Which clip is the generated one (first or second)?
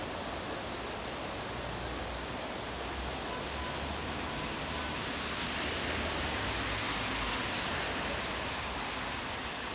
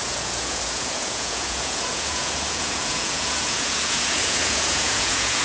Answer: second